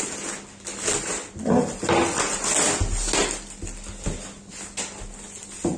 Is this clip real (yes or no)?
yes